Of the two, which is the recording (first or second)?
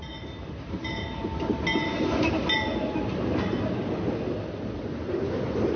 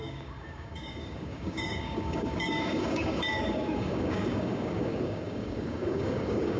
first